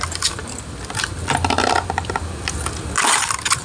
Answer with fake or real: real